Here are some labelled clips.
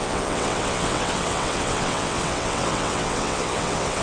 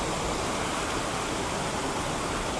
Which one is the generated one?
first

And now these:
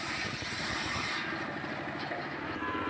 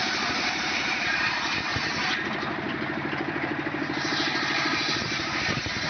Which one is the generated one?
second